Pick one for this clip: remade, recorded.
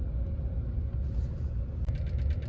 recorded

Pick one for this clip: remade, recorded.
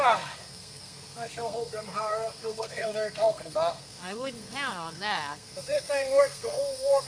remade